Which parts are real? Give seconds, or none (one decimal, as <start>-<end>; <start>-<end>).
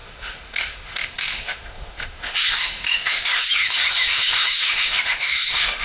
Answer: none